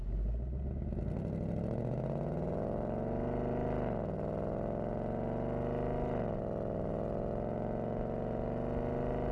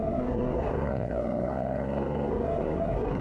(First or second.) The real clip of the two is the first